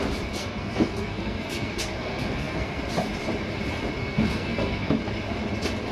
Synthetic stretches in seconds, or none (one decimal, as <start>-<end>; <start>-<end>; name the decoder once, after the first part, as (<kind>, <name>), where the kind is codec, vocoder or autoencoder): 0.4-2.8 (codec, SNAC); 4.0-5.0